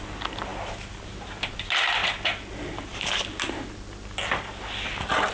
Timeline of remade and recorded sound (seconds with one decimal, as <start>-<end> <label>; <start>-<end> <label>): 0.0-5.3 recorded